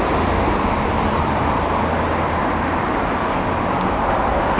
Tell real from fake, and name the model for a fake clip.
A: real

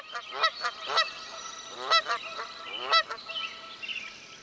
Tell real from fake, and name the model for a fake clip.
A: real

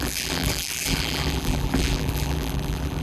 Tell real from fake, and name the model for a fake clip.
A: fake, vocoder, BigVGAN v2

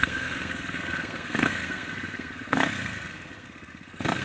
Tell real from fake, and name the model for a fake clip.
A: fake, codec, SNAC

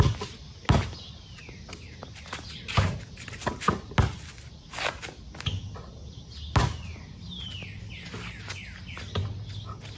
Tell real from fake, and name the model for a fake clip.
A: real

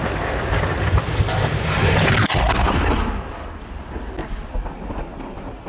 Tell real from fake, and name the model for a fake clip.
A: real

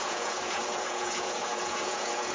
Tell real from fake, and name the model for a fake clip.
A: fake, vocoder, Vocos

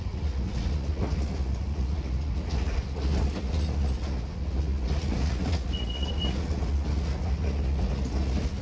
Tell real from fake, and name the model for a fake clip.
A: fake, vocoder, Vocos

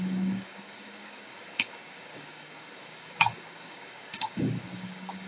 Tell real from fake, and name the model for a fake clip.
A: fake, codec, DAC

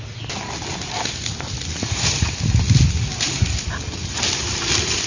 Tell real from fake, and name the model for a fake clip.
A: real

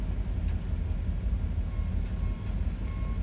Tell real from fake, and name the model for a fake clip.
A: real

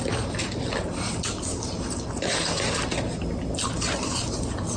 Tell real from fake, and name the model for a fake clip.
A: real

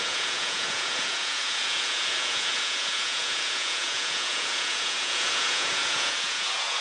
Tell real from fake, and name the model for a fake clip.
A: fake, vocoder, Vocos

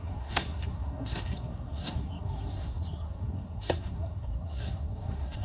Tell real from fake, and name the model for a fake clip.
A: fake, codec, SNAC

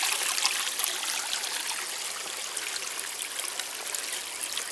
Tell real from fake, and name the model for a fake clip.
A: real